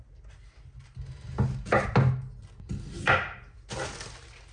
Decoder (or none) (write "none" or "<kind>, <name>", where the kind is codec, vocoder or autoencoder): none